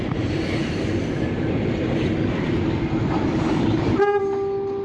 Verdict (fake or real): real